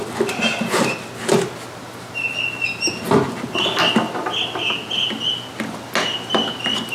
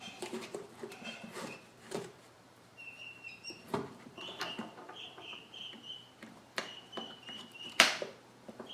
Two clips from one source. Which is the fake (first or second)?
second